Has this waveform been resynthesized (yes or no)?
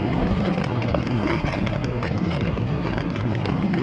yes